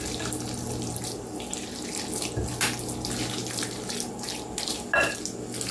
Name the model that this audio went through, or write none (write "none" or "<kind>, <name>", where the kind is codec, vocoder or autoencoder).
none